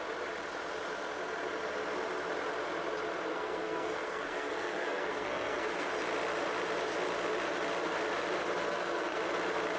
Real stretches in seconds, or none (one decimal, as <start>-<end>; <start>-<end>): 0.0-3.3; 5.9-8.7; 9.2-9.8